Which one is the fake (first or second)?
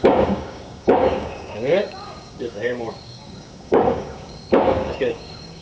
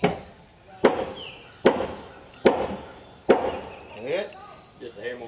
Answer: first